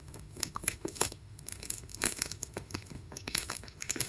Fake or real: fake